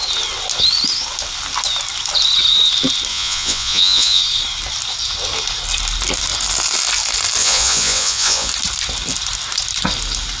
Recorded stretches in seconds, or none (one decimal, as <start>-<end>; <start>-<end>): 0.0-3.1; 4.2-7.4; 8.5-10.4